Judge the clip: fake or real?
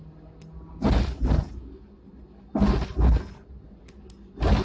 real